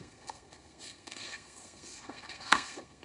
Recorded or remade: remade